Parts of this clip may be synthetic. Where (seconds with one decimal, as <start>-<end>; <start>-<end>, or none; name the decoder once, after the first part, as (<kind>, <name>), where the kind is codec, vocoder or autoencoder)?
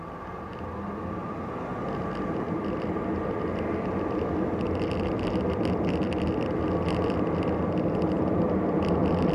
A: none